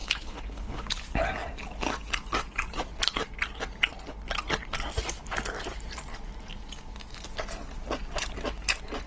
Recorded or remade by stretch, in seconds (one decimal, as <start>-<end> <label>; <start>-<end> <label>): 0.0-0.9 remade; 0.9-9.1 recorded